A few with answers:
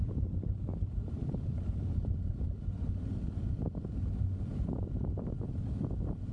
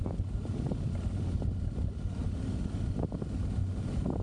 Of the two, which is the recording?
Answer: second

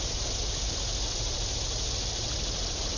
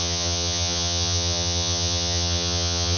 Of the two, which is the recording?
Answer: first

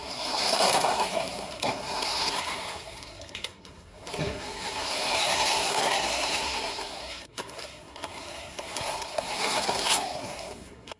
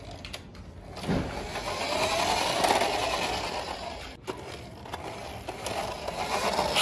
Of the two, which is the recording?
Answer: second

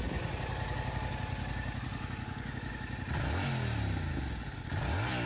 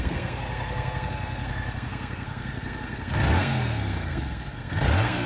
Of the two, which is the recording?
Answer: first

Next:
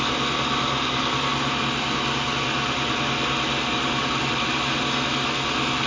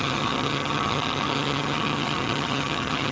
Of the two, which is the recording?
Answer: first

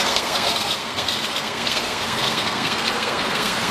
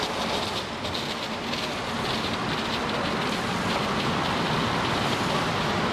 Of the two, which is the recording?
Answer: second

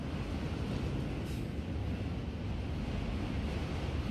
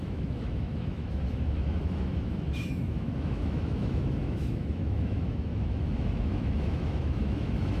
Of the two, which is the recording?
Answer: first